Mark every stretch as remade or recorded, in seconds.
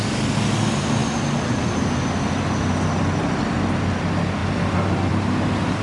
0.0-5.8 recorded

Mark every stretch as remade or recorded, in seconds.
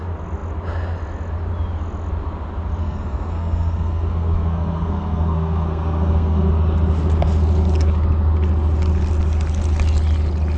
0.0-2.8 recorded; 2.8-6.5 remade; 6.5-10.6 recorded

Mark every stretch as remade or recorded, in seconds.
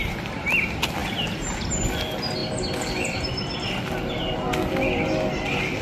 0.0-5.8 recorded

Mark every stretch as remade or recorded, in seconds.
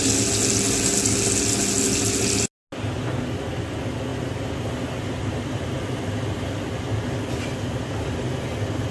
0.0-8.9 recorded